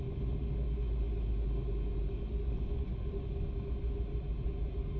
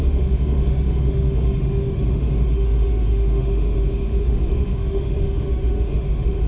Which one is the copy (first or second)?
second